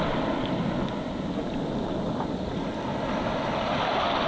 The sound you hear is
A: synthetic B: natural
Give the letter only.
B